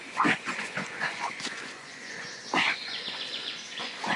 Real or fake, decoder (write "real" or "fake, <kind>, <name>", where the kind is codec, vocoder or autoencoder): fake, vocoder, Vocos